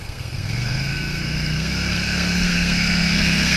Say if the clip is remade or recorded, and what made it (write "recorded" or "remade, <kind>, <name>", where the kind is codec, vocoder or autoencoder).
remade, codec, SNAC